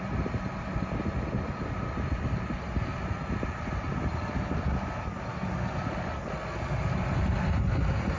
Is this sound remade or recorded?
recorded